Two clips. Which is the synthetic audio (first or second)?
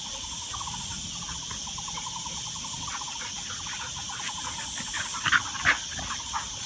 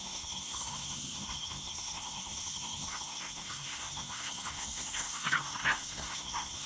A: second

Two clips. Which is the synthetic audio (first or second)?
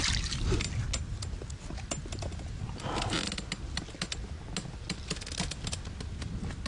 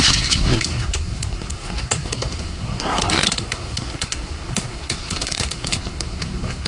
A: second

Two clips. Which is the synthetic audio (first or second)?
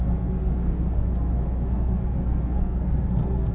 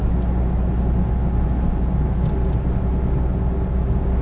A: first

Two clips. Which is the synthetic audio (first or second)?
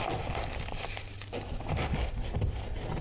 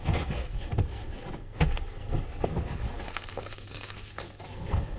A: second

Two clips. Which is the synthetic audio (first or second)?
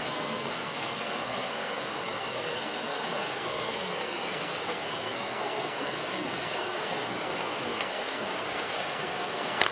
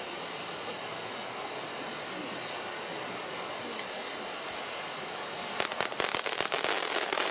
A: first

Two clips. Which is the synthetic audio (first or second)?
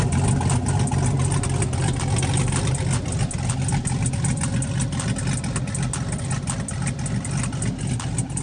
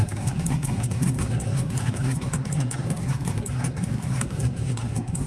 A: second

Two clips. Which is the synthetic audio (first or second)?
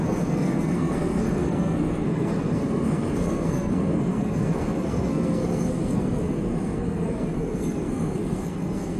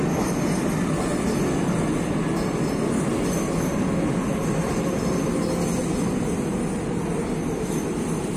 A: first